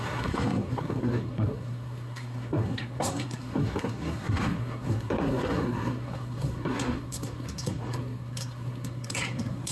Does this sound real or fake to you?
fake